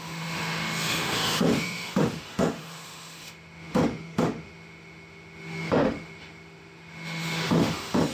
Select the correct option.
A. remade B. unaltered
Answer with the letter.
A